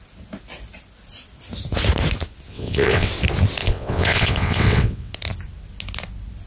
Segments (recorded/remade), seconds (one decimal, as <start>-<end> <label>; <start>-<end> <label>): 0.0-2.5 recorded; 2.5-3.1 remade; 3.1-3.6 recorded; 3.6-5.1 remade; 5.1-6.5 recorded